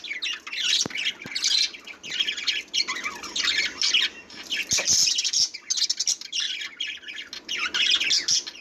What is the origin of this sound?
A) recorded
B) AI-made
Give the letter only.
A